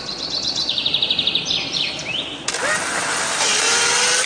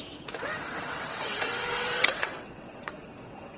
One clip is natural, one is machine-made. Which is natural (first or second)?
first